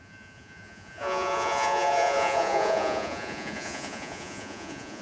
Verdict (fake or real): fake